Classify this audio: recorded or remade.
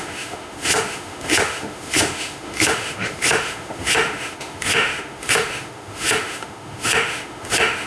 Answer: remade